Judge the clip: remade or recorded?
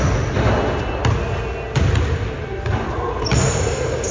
recorded